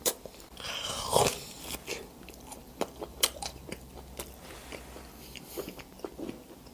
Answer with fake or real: fake